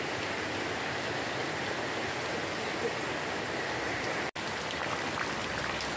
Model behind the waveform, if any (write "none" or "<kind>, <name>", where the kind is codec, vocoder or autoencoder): none